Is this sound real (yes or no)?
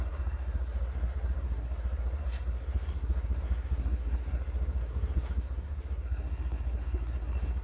no